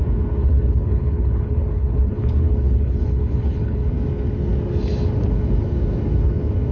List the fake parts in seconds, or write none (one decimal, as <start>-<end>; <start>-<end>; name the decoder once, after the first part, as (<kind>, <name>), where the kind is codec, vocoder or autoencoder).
0.4-3.9 (codec, HILCodec)